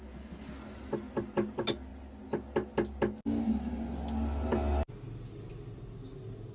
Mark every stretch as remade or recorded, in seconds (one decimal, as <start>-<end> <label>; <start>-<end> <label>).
0.0-6.5 recorded